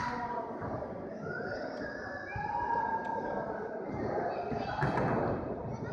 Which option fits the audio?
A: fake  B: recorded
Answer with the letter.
B